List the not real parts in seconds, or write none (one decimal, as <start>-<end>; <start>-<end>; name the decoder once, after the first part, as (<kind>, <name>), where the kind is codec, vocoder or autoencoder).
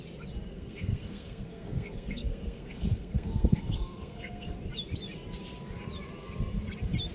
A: 0.5-4.6 (codec, SNAC)